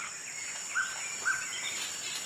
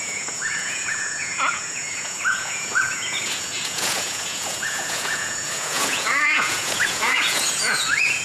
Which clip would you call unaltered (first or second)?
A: first